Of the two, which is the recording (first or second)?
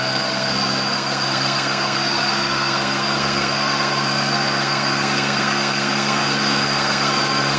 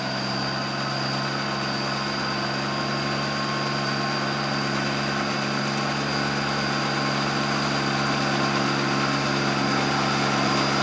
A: second